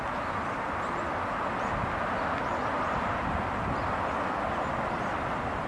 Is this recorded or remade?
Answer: recorded